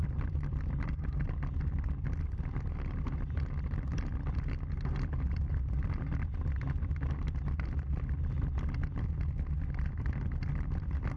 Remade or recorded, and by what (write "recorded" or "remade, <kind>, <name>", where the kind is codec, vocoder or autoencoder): recorded